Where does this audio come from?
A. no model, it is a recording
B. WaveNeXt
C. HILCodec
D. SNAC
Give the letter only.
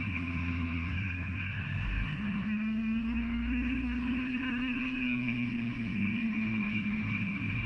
D